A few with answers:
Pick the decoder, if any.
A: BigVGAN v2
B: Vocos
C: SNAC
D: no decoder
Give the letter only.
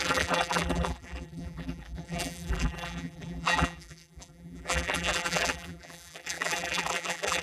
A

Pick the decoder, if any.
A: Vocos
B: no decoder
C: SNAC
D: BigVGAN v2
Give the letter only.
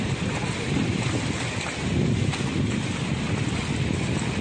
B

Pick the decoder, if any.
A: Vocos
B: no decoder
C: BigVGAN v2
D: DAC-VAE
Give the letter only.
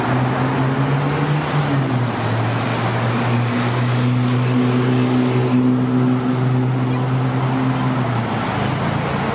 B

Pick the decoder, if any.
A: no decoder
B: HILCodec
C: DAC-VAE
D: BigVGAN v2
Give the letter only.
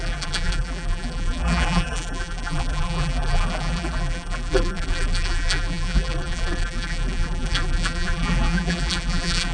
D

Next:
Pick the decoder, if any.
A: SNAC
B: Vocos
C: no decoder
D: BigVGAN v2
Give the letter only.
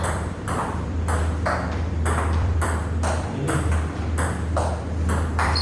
D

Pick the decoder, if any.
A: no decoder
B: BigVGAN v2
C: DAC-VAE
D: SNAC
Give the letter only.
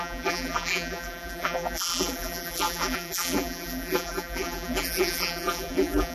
B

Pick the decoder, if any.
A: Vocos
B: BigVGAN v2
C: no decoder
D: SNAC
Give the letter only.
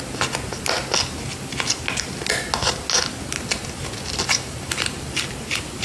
C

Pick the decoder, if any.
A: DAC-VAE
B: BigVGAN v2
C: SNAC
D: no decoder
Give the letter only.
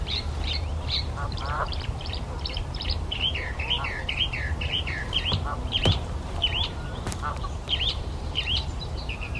B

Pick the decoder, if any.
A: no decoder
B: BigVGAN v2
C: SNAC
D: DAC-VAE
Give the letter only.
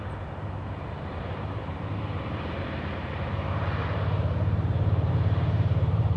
B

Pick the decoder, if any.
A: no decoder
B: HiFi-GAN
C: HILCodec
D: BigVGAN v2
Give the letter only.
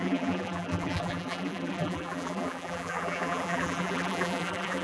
D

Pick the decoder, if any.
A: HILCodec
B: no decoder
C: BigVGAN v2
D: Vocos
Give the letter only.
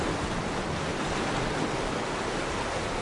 B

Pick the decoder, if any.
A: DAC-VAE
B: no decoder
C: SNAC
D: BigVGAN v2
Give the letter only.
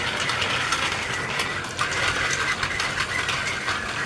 B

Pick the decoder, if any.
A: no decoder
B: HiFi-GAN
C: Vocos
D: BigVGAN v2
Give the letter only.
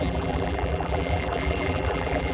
D